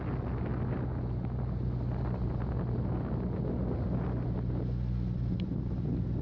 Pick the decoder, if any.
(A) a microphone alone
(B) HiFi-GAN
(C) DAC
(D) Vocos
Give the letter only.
A